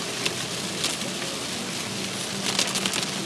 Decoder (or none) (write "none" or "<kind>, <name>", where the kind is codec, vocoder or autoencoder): none